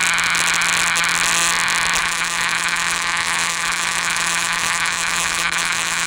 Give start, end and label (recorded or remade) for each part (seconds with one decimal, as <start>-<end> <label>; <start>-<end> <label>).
0.0-2.0 recorded; 2.0-6.1 remade